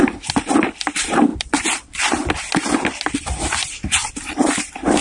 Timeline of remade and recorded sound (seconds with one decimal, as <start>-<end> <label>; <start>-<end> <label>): 0.0-5.0 remade